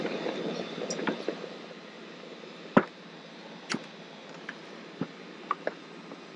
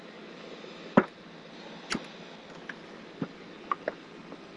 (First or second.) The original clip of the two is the second